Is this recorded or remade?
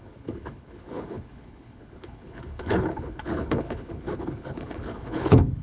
remade